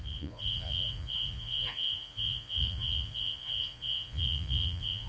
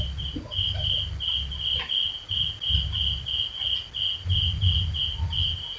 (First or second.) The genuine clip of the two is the second